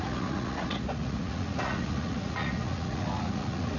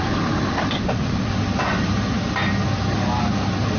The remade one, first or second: first